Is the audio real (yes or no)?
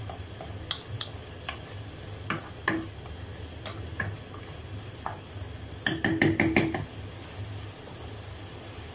yes